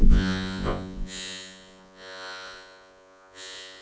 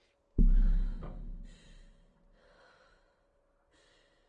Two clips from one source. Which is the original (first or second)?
second